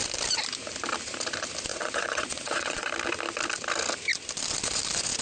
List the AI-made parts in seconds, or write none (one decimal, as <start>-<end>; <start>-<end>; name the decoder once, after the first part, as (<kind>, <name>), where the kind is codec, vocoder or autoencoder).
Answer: 1.7-2.9 (vocoder, WaveNeXt)